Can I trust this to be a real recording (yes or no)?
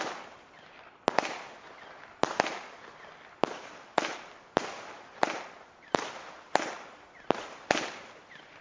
yes